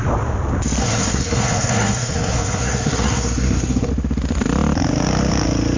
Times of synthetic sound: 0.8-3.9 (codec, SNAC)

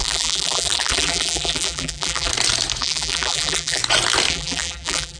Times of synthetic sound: 0.0-2.3 (vocoder, BigVGAN v2); 2.8-3.8; 4.3-5.2

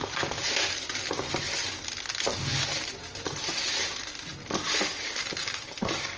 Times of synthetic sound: 5.4-6.2 (vocoder, BigVGAN v2)

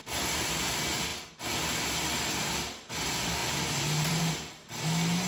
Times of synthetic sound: 3.4-4.2 (vocoder, BigVGAN v2)